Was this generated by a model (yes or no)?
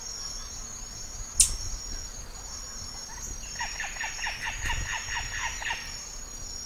no